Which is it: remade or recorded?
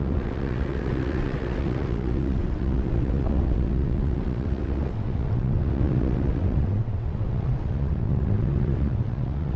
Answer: remade